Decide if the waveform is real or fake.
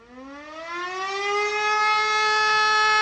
real